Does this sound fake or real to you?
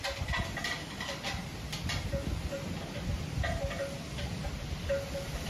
real